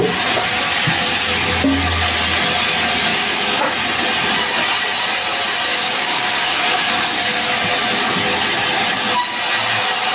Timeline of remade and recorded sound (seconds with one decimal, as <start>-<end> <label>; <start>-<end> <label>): 0.0-3.1 recorded; 3.1-3.7 remade; 3.7-5.7 recorded; 5.7-6.9 remade; 6.9-10.1 recorded